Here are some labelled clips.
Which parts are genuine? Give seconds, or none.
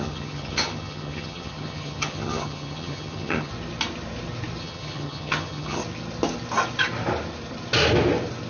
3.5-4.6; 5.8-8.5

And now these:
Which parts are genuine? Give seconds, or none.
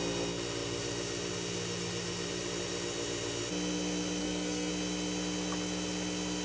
0.0-4.2; 4.7-6.4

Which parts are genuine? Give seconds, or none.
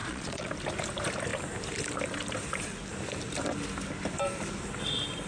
0.5-5.3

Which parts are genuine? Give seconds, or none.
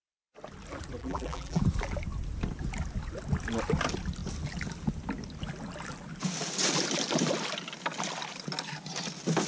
0.0-1.0; 1.6-9.5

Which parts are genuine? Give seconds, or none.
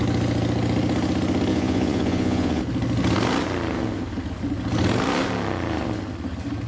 0.0-1.5; 2.6-6.7